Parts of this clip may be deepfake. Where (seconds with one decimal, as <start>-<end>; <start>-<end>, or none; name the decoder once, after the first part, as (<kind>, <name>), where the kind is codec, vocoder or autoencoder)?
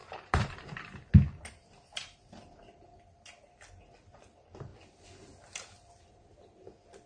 0.0-0.8 (vocoder, BigVGAN v2); 1.6-2.6